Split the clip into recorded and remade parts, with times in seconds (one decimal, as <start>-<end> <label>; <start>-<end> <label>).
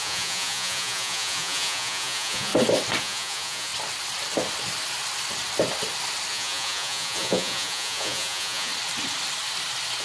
0.0-2.5 remade; 2.5-3.0 recorded; 3.0-3.7 remade; 3.7-6.3 recorded; 6.3-8.7 remade; 8.7-10.0 recorded